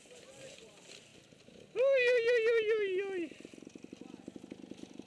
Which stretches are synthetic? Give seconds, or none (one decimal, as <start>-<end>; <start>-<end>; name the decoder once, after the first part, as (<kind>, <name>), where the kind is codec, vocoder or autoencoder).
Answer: none